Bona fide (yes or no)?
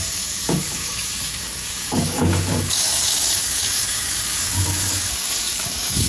no